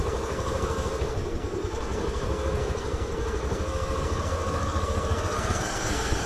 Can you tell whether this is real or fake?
fake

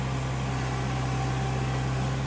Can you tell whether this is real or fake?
real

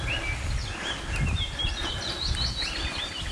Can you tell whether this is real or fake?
real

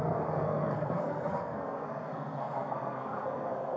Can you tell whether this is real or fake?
fake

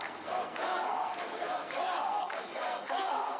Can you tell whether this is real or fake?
fake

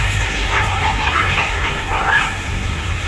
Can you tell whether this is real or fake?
fake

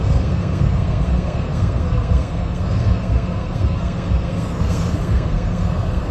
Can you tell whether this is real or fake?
fake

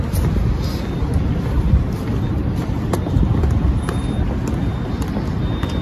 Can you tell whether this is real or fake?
real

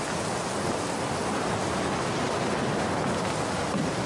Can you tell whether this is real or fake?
real